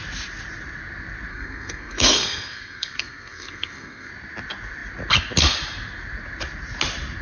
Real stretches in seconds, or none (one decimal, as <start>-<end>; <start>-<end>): 0.0-1.3; 4.1-7.2